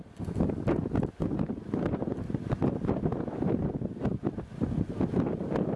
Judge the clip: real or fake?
real